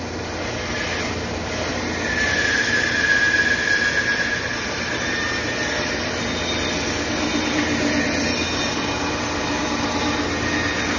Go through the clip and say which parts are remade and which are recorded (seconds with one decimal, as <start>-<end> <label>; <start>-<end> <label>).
0.0-11.0 recorded